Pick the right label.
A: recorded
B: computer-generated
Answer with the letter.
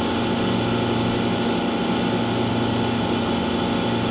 A